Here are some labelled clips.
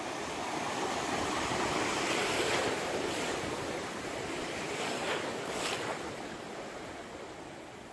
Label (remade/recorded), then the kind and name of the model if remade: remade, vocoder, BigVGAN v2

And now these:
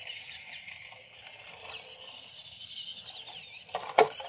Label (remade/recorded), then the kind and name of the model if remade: recorded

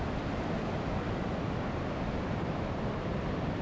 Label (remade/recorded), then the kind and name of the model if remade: recorded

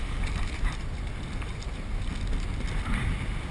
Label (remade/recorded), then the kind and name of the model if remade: recorded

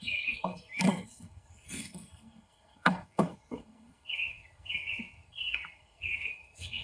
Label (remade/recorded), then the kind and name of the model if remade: remade, codec, SNAC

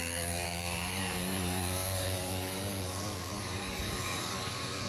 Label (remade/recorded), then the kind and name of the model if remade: remade, codec, DAC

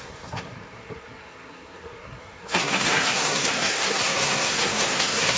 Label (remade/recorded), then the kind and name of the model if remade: remade, codec, SNAC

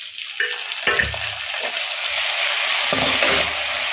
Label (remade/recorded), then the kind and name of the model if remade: recorded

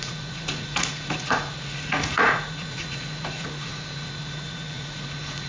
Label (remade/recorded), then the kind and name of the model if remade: remade, vocoder, Vocos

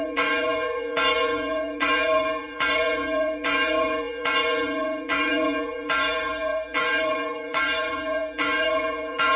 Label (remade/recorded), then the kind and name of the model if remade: remade, vocoder, Vocos